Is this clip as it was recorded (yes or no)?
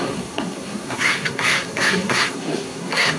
no